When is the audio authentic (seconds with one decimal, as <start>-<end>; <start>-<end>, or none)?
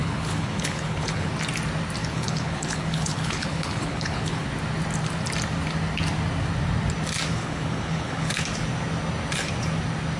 1.3-2.0; 4.5-7.3; 8.3-10.2